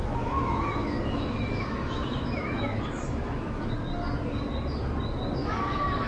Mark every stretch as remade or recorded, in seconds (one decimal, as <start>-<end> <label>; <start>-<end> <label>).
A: 0.0-3.7 remade; 3.7-5.4 recorded; 5.4-6.1 remade